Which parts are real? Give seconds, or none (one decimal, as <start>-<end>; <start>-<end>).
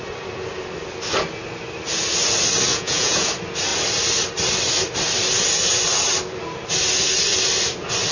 0.0-2.7; 3.3-8.1